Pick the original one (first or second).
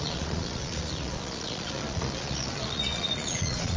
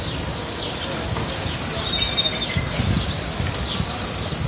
second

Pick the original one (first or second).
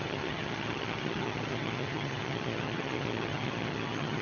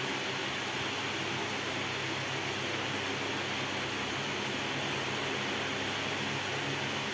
second